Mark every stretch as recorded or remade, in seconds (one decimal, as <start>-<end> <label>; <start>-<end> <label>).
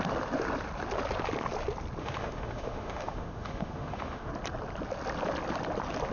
0.0-2.0 recorded; 2.0-4.3 remade; 4.3-6.1 recorded